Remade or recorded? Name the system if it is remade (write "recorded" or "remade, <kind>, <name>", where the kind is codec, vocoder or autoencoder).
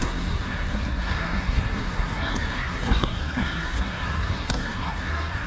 remade, codec, SNAC